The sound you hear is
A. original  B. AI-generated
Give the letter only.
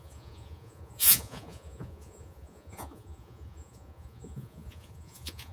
B